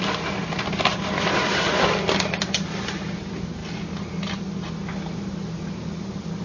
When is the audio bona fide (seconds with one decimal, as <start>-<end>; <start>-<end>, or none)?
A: 0.0-6.4